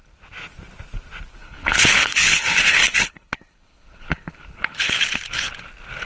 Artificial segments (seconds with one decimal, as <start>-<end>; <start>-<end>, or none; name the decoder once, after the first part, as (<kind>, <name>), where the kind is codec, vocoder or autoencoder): 1.3-5.0 (codec, HILCodec)